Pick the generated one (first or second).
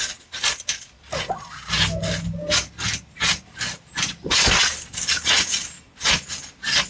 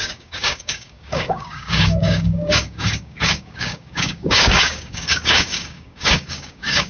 second